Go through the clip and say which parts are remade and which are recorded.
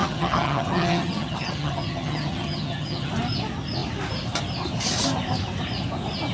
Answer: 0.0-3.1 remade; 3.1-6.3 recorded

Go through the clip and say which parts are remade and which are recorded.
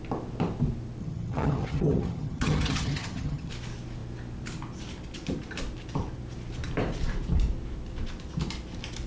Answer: 0.0-1.0 recorded; 1.0-3.5 remade; 3.5-9.1 recorded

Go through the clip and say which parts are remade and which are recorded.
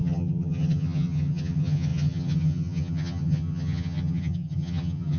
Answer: 0.0-5.2 remade